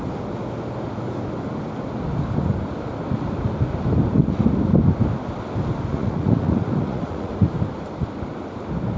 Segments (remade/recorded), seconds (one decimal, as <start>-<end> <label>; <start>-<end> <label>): 0.0-5.9 recorded; 5.9-7.3 remade; 7.3-9.0 recorded

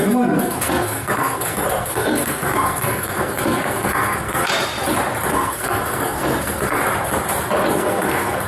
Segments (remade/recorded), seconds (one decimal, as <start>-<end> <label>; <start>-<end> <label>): 0.0-4.5 remade; 4.5-5.3 recorded; 5.3-6.8 remade; 6.8-7.7 recorded; 7.7-8.5 remade

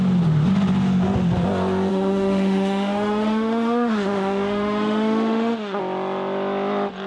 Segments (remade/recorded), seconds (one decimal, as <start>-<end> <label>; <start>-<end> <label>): 0.0-1.9 recorded; 1.9-5.8 remade; 5.8-7.1 recorded

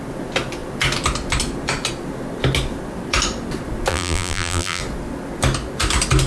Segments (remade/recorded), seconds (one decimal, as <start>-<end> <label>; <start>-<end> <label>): 0.0-3.9 recorded; 3.9-4.8 remade; 4.8-6.3 recorded